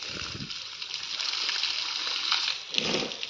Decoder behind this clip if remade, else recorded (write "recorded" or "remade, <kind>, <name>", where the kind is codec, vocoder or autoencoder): recorded